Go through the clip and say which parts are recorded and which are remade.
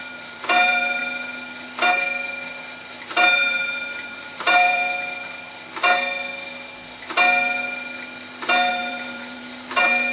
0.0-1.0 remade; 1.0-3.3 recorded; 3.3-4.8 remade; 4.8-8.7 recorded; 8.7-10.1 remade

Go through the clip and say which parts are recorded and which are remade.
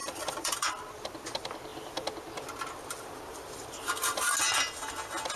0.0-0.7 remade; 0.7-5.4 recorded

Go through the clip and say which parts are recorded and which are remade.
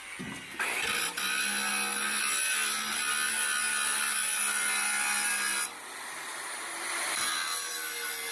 0.0-8.3 recorded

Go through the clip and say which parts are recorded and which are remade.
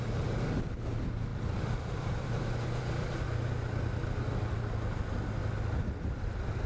0.0-1.3 recorded; 1.3-2.9 remade; 2.9-6.7 recorded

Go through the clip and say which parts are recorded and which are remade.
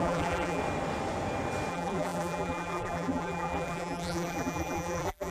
0.0-0.6 remade; 0.6-1.7 recorded; 1.7-5.3 remade